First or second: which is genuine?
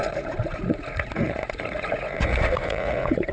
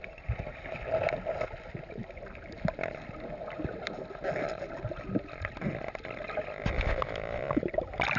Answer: second